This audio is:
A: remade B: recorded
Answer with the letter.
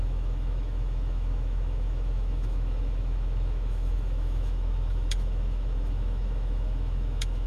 A